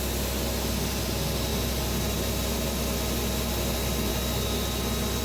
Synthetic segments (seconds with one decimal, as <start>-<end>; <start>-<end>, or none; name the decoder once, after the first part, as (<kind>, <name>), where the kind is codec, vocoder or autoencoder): none